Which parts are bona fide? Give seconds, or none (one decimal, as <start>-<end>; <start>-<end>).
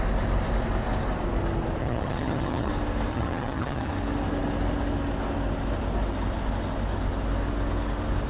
0.0-1.8; 2.7-3.1; 3.9-8.3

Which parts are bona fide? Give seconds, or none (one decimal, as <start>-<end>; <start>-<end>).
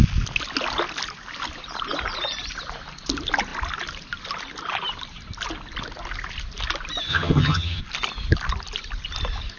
0.0-7.1; 7.8-9.6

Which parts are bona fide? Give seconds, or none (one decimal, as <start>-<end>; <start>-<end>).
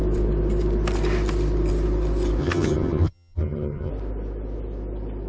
0.0-2.4; 3.9-5.3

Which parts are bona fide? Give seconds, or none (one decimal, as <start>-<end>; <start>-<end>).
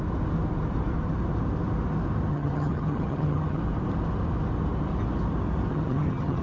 0.0-2.3; 3.6-5.7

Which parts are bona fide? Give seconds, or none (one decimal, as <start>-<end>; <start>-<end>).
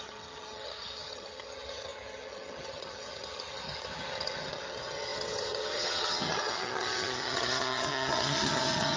none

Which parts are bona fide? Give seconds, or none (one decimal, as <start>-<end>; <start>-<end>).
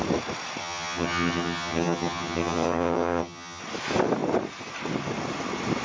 0.0-0.6; 3.6-5.8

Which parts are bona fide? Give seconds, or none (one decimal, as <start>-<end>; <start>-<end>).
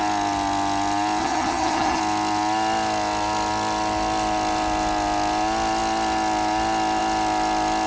0.0-1.2; 2.0-7.9